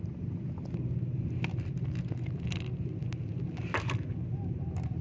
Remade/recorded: recorded